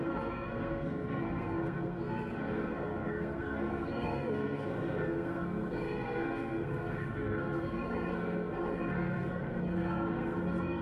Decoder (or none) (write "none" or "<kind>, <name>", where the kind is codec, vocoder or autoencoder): codec, SNAC